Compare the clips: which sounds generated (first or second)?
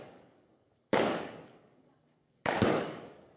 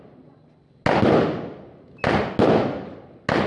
first